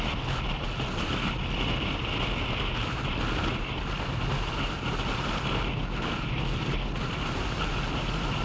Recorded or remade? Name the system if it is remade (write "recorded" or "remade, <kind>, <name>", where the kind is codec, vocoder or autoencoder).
recorded